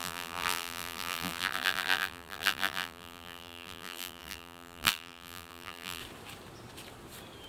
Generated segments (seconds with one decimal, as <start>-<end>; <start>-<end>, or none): 0.0-6.0